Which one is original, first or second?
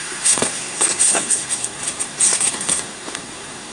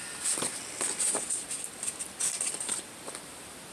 second